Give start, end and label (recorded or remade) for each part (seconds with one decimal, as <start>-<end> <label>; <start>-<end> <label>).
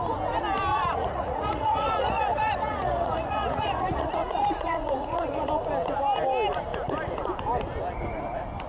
0.0-0.7 recorded; 0.7-5.5 remade; 5.5-8.7 recorded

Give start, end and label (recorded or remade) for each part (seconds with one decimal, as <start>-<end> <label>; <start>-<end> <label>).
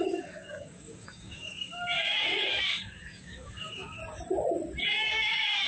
0.0-4.0 remade; 4.0-4.8 recorded; 4.8-5.7 remade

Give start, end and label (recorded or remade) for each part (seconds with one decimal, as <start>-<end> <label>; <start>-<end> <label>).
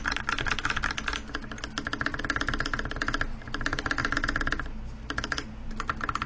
0.0-6.3 recorded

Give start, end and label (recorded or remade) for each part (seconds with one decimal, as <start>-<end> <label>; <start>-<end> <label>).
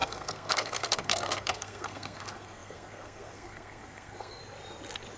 0.0-4.4 remade; 4.4-5.2 recorded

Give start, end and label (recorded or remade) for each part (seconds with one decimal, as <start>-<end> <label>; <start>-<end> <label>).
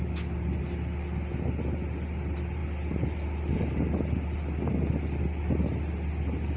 0.0-6.6 recorded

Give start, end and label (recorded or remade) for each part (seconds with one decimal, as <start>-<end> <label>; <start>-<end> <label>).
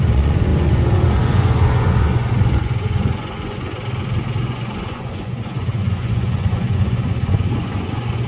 0.0-3.7 remade; 3.7-4.4 recorded; 4.4-8.3 remade